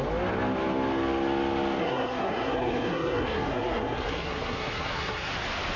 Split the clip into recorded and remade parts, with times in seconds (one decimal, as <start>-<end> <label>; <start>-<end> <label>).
0.0-1.8 recorded; 1.8-5.3 remade; 5.3-5.8 recorded